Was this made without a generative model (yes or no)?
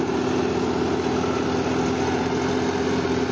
yes